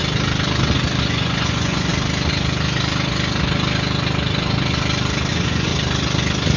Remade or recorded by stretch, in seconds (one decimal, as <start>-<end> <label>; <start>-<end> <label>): 0.0-1.0 recorded; 1.0-1.9 remade; 1.9-5.3 recorded; 5.3-5.7 remade; 5.7-6.6 recorded